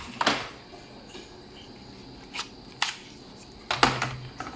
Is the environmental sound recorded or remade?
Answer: recorded